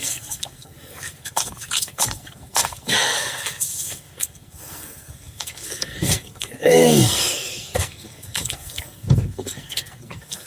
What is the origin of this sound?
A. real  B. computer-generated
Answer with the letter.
B